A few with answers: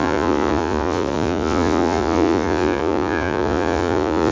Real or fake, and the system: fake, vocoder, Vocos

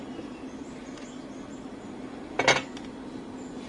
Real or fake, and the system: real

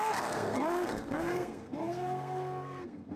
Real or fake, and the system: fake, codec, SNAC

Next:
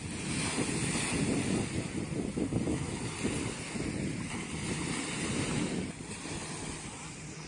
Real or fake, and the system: real